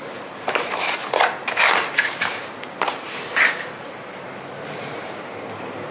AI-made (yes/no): no